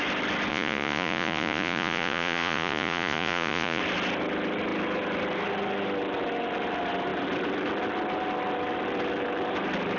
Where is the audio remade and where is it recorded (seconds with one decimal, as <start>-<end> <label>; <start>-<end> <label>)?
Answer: 0.0-0.5 recorded; 0.5-3.8 remade; 3.8-10.0 recorded